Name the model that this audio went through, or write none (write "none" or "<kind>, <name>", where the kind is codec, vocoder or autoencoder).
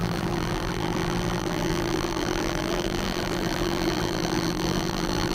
vocoder, BigVGAN v2